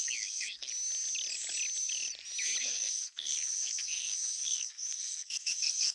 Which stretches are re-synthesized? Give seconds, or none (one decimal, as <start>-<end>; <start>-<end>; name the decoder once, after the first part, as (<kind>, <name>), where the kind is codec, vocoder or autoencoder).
0.0-0.7 (codec, SNAC); 2.6-5.9